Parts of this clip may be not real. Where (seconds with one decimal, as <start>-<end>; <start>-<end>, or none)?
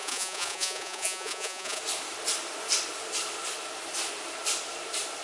0.0-1.8